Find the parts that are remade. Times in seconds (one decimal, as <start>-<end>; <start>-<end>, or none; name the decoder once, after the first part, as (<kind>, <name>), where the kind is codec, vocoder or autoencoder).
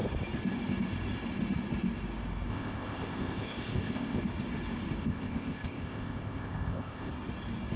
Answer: 2.5-4.2 (codec, ZipCodec); 5.0-7.1